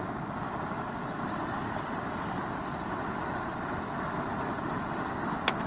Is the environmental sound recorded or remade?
recorded